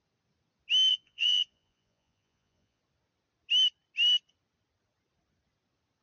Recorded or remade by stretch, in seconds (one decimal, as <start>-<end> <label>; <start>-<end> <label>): 0.0-0.9 recorded; 0.9-2.8 remade; 2.8-6.0 recorded